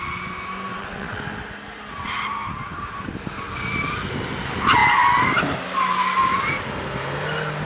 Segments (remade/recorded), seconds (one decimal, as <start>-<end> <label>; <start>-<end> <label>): 0.0-0.7 recorded; 0.7-1.2 remade; 1.2-7.7 recorded

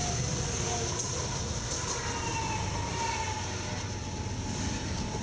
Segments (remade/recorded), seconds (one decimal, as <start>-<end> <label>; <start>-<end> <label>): 0.0-5.2 recorded